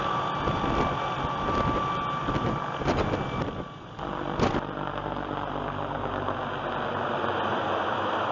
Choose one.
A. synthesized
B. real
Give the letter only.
B